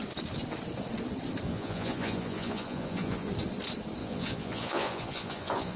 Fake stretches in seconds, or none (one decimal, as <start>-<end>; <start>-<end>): 1.5-3.3; 4.0-5.8